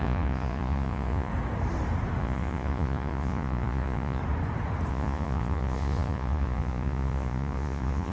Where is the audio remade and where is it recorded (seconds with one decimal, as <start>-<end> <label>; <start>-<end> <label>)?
0.0-1.3 remade; 1.3-2.2 recorded; 2.2-4.2 remade; 4.2-4.9 recorded; 4.9-8.1 remade